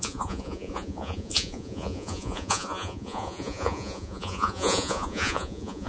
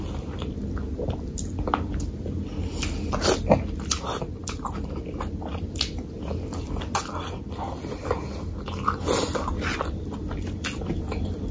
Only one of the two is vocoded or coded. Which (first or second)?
first